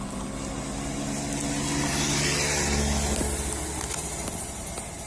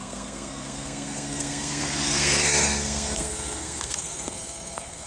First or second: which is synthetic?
second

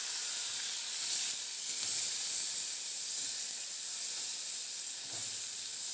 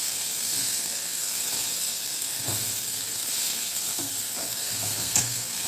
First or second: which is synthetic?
second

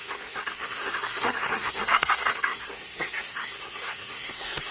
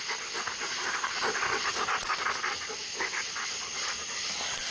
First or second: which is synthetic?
first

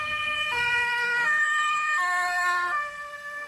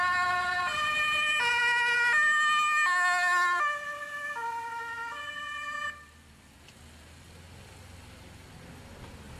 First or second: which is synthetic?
first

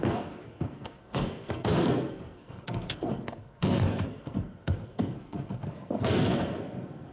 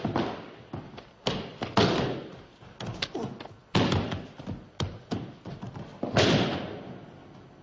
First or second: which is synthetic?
first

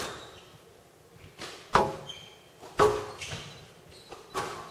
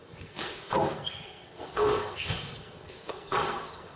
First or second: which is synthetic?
second